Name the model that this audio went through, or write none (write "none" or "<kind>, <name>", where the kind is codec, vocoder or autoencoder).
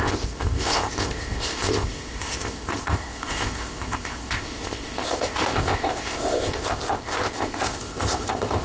codec, ZipCodec